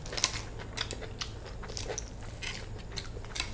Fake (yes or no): no